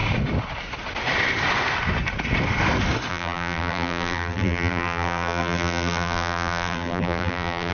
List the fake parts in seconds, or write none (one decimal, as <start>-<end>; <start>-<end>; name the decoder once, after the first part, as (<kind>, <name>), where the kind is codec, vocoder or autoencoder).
3.1-7.7 (vocoder, BigVGAN v2)